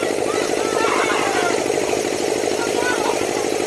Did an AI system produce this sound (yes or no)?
no